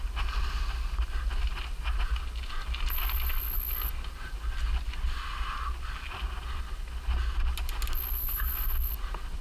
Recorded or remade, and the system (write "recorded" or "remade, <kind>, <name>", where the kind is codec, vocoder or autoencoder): recorded